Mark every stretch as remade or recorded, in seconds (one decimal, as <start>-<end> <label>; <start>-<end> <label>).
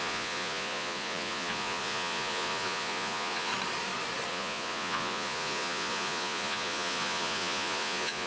0.0-3.5 remade; 3.5-4.3 recorded; 4.3-8.3 remade